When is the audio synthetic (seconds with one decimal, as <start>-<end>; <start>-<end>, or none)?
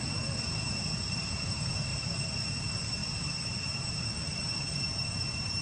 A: 0.0-1.9; 2.5-5.6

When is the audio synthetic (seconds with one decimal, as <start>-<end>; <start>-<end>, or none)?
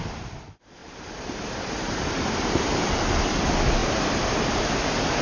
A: 0.8-2.9; 3.8-4.6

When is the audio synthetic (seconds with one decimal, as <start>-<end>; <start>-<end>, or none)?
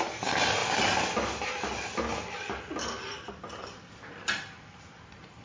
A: none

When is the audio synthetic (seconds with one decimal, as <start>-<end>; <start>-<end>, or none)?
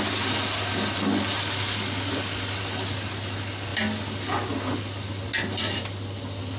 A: none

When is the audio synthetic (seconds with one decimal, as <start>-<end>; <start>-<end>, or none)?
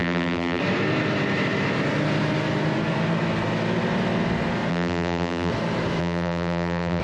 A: 0.0-0.6; 4.7-5.5; 6.0-7.0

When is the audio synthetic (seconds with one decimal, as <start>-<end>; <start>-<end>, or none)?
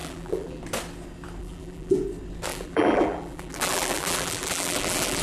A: 0.0-0.6; 1.4-2.0; 2.5-5.2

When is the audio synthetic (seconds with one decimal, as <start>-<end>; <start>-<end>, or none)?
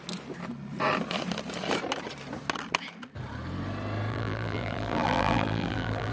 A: 4.1-6.1